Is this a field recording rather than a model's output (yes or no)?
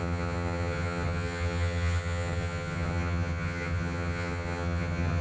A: no